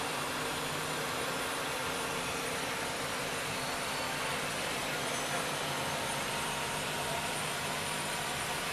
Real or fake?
fake